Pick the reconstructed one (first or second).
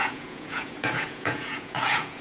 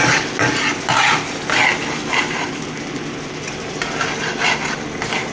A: first